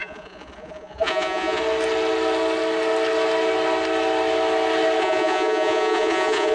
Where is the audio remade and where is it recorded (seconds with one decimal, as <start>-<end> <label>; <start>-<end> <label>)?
0.0-1.6 remade; 1.6-5.0 recorded; 5.0-6.5 remade